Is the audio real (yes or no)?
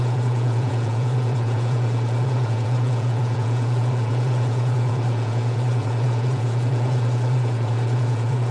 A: no